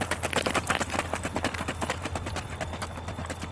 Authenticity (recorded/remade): recorded